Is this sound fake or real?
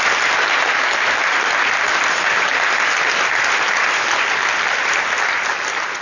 real